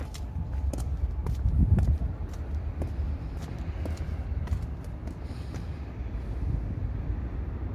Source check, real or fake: real